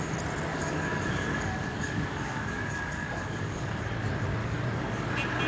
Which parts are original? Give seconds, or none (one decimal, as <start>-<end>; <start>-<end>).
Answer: 0.0-0.5; 3.8-4.4; 5.1-5.5